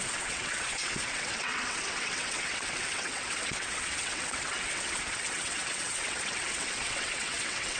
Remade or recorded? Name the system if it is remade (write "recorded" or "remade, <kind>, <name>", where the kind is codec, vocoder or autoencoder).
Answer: remade, vocoder, WaveNeXt